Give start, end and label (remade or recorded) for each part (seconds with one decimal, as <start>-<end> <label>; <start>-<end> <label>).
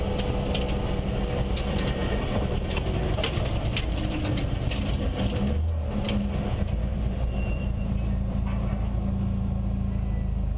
0.0-2.0 recorded; 2.0-4.4 remade; 4.4-6.9 recorded; 6.9-8.7 remade; 8.7-10.6 recorded